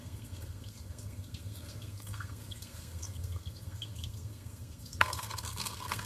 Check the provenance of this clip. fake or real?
fake